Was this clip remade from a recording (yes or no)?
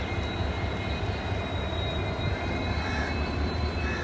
no